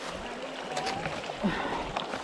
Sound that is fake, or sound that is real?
real